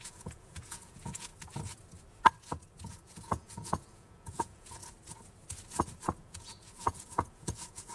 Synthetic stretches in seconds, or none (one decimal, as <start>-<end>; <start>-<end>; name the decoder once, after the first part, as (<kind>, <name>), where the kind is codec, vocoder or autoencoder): 0.0-1.3 (vocoder, Vocos); 2.9-4.8; 6.2-7.9